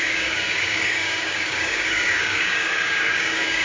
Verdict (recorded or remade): remade